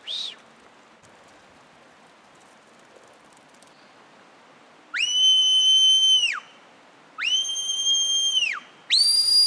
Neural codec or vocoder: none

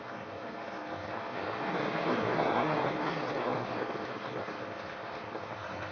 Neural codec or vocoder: codec, SNAC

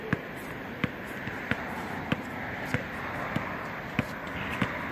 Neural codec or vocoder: none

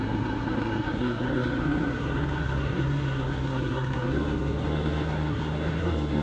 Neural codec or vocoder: codec, SNAC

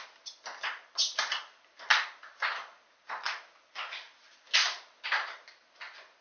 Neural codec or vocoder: none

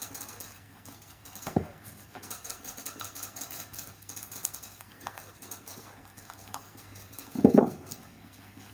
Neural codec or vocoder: codec, SNAC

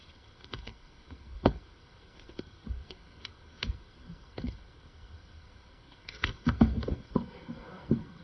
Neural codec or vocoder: codec, SNAC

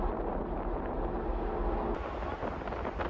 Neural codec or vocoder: none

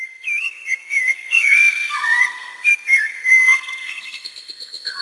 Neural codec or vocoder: codec, SNAC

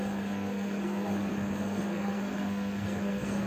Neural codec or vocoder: codec, SNAC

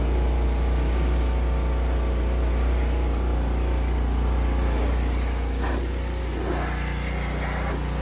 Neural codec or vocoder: none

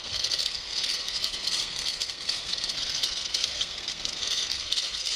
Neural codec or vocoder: codec, SNAC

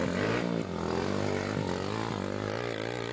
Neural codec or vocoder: none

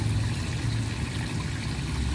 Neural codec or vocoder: none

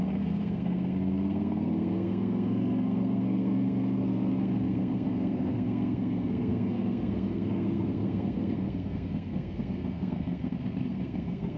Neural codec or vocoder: codec, SNAC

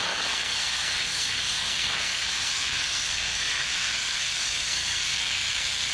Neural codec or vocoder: codec, SNAC